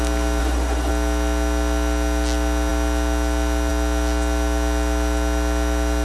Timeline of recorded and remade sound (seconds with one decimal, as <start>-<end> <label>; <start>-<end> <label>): 0.0-0.4 recorded; 0.4-0.9 remade; 0.9-6.0 recorded